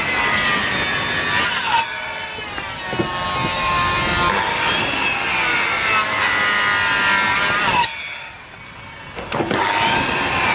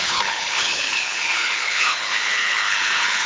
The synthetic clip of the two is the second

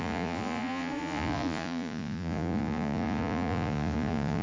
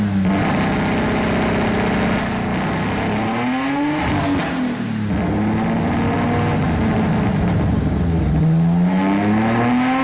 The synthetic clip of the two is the first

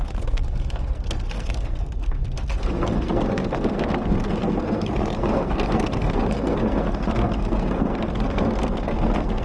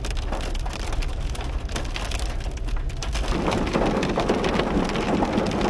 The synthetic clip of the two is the first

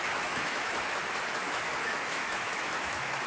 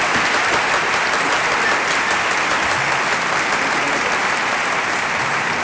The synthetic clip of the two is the first